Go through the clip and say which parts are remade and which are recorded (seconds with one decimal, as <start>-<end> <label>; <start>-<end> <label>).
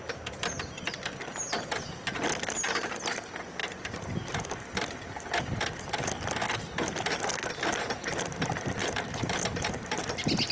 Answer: 0.0-3.6 recorded; 3.6-6.1 remade; 6.1-8.8 recorded; 8.8-10.0 remade; 10.0-10.5 recorded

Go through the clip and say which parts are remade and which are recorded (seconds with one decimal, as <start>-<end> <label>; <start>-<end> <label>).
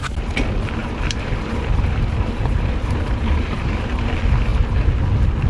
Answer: 0.0-0.8 recorded; 0.8-4.1 remade; 4.1-4.5 recorded; 4.5-5.0 remade; 5.0-5.5 recorded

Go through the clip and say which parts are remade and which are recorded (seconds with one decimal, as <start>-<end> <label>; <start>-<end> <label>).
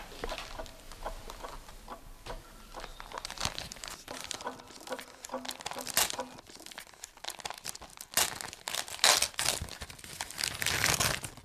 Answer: 0.0-2.9 recorded; 2.9-3.9 remade; 3.9-11.4 recorded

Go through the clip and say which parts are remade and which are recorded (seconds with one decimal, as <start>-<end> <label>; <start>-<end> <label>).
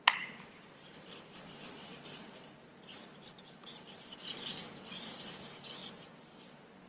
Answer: 0.0-5.8 remade; 5.8-6.4 recorded; 6.4-6.9 remade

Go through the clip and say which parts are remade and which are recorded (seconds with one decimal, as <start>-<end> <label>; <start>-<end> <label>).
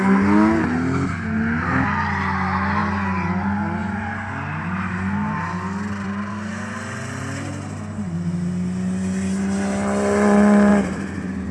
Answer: 0.0-10.7 recorded; 10.7-11.5 remade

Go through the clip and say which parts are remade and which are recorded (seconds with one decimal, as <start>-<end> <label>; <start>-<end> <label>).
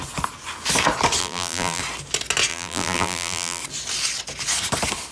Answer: 0.0-1.2 recorded; 1.2-1.8 remade; 1.8-2.5 recorded; 2.5-3.6 remade; 3.6-5.1 recorded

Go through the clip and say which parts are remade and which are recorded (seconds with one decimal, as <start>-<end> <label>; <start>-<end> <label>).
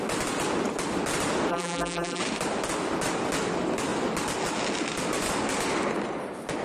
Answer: 0.0-1.5 recorded; 1.5-2.2 remade; 2.2-6.6 recorded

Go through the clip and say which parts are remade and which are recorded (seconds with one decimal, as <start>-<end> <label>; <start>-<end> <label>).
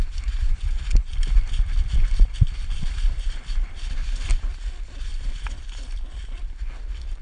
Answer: 0.0-1.1 recorded; 1.1-3.8 remade; 3.8-5.1 recorded; 5.1-6.4 remade; 6.4-7.2 recorded